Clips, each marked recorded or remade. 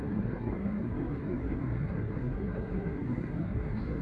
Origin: remade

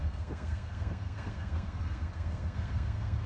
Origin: remade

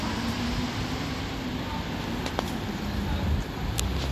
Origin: recorded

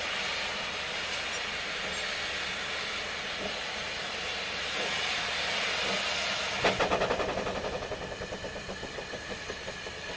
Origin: recorded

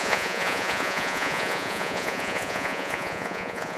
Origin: remade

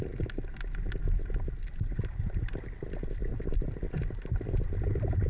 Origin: recorded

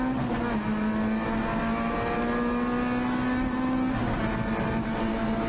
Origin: recorded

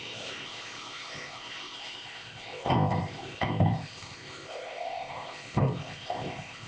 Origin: remade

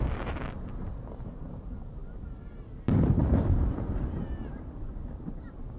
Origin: remade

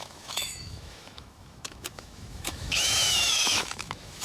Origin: remade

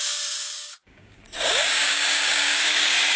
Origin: remade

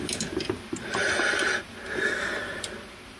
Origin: recorded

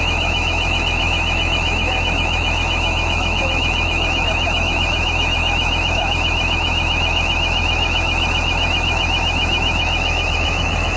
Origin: remade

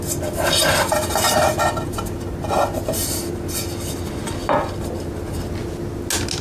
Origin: recorded